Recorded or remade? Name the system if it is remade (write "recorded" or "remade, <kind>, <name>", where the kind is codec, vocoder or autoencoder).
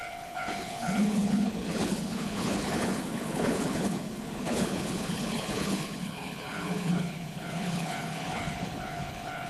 remade, codec, HILCodec